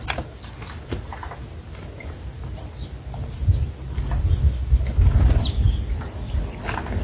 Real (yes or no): yes